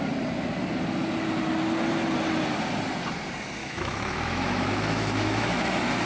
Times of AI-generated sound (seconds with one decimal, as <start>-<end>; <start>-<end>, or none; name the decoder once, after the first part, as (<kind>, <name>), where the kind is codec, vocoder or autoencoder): 3.6-5.6 (autoencoder, DAC-VAE)